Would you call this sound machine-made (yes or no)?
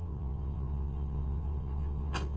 yes